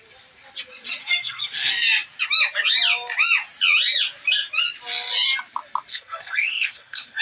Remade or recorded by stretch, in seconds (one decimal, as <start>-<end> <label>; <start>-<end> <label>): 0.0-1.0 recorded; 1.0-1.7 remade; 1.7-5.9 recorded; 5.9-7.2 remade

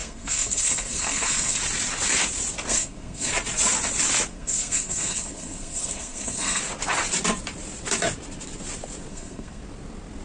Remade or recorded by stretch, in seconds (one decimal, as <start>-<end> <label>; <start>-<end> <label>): 0.0-1.6 remade; 1.6-2.7 recorded; 2.7-3.3 remade; 3.3-4.3 recorded; 4.3-6.6 remade; 6.6-9.1 recorded; 9.1-9.6 remade; 9.6-10.2 recorded

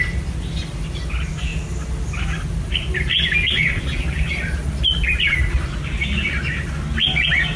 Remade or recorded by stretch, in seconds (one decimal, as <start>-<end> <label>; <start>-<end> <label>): 0.0-7.6 recorded